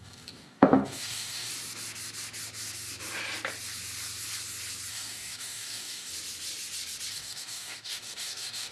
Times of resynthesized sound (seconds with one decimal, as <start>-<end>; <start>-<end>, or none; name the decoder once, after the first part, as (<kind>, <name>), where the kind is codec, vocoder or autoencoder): 0.0-1.5 (codec, DAC); 4.9-6.1; 7.1-8.7